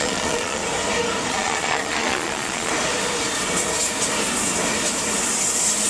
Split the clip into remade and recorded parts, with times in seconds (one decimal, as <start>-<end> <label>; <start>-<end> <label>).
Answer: 0.0-0.6 remade; 0.6-1.3 recorded; 1.3-2.7 remade; 2.7-5.9 recorded

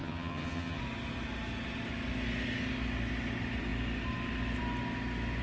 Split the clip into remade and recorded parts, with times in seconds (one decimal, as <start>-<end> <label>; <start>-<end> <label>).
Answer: 0.0-0.8 remade; 0.8-5.4 recorded

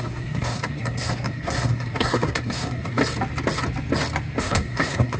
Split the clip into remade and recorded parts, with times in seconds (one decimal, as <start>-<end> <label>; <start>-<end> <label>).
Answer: 0.0-3.0 remade; 3.0-4.4 recorded; 4.4-5.2 remade

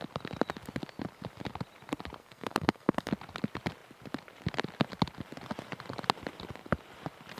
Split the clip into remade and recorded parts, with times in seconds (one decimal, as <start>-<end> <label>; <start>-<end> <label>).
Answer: 0.0-2.2 recorded; 2.2-3.1 remade; 3.1-7.4 recorded

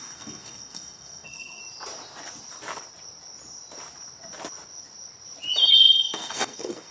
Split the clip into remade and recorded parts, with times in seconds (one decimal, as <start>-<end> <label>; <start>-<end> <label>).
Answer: 0.0-1.6 remade; 1.6-5.7 recorded; 5.7-6.9 remade